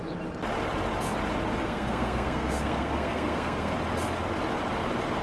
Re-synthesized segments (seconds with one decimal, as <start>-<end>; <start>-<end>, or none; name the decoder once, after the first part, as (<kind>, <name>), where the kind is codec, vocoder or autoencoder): 1.6-3.7 (codec, SNAC)